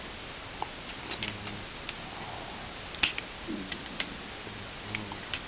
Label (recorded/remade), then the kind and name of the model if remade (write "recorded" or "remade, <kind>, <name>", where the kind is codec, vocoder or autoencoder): recorded